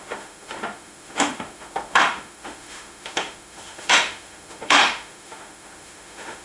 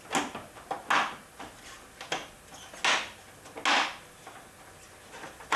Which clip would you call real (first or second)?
second